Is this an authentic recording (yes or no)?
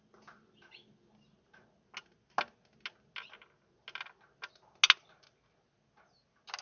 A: yes